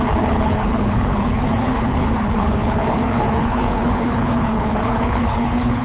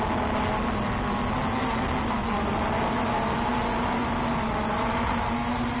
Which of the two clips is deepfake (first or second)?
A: first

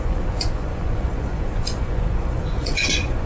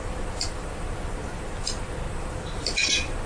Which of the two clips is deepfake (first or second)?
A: first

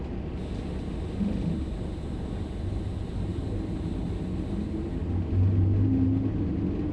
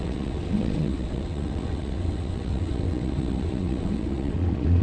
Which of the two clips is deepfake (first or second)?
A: second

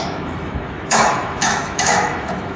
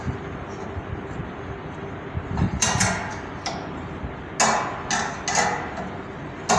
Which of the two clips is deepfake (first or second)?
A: first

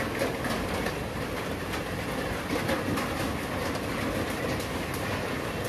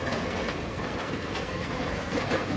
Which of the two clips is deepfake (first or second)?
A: second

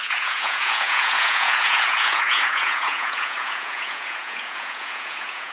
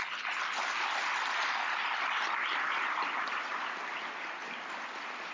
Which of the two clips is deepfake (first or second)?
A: first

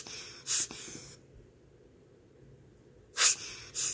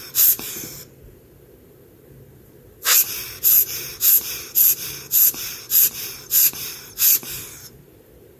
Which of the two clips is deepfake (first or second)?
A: second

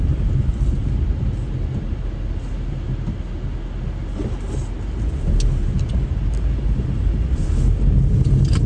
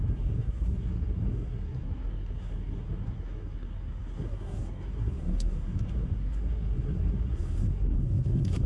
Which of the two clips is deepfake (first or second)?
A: second